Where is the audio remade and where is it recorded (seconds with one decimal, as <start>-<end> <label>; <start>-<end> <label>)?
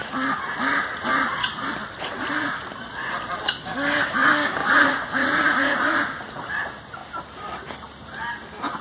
0.0-4.6 recorded; 4.6-6.5 remade; 6.5-8.8 recorded